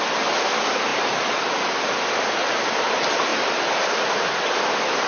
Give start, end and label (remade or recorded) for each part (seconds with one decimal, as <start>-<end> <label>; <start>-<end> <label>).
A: 0.0-5.1 recorded